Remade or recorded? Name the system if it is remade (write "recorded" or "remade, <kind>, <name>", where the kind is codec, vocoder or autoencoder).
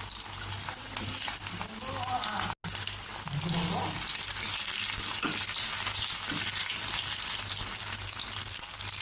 recorded